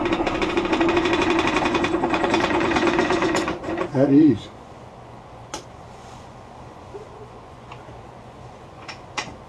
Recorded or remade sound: remade